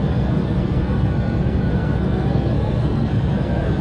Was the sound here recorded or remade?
remade